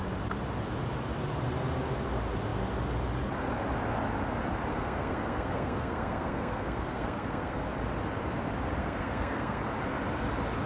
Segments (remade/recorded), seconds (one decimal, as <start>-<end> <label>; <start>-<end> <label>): 0.0-4.7 recorded; 4.7-7.7 remade; 7.7-8.8 recorded; 8.8-9.6 remade; 9.6-10.7 recorded

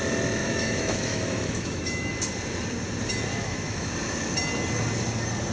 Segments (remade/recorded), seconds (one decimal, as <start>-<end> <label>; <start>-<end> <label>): 0.0-0.4 recorded; 0.4-2.1 remade; 2.1-3.3 recorded; 3.3-3.9 remade; 3.9-5.5 recorded

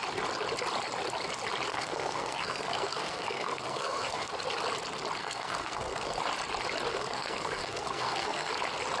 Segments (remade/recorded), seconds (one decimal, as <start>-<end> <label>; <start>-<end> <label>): 0.0-1.7 recorded; 1.7-4.3 remade; 4.3-5.2 recorded; 5.2-6.2 remade; 6.2-6.9 recorded; 6.9-8.5 remade; 8.5-9.0 recorded